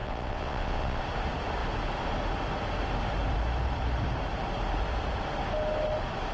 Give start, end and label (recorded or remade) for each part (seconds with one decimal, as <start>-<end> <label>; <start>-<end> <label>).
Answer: 0.0-1.0 remade; 1.0-6.3 recorded